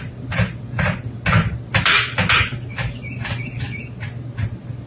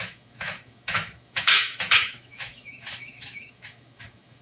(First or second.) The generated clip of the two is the second